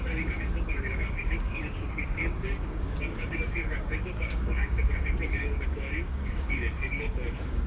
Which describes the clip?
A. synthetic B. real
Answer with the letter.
A